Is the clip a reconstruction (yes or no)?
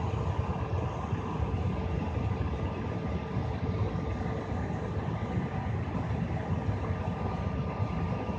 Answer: no